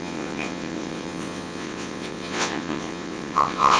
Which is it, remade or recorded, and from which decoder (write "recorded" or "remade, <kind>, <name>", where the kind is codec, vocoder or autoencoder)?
remade, vocoder, WaveNeXt